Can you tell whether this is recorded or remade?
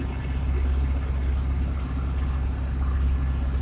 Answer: recorded